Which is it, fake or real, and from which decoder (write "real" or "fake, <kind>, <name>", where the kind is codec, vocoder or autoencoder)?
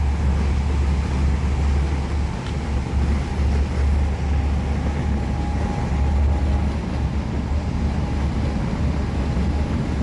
real